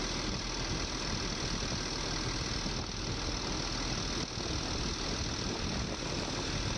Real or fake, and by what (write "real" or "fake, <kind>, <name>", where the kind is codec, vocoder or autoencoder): real